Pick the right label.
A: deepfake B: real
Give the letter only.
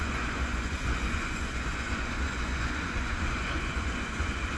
A